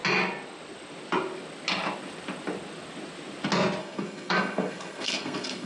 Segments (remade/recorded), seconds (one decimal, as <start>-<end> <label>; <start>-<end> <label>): 0.0-3.8 recorded; 3.8-5.7 remade